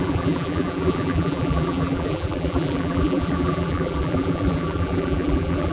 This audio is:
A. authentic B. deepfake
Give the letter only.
B